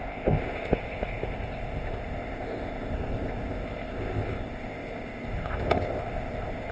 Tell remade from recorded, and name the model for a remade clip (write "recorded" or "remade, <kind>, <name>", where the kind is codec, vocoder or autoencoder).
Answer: remade, codec, ZipCodec